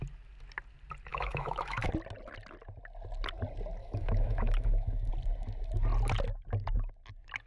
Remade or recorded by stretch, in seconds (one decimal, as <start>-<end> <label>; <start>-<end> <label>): 0.0-1.1 recorded; 1.1-1.9 remade; 1.9-3.8 recorded; 3.8-5.1 remade; 5.1-7.5 recorded